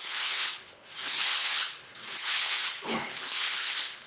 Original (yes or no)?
no